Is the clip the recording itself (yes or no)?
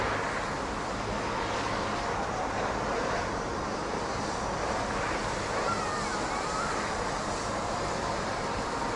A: yes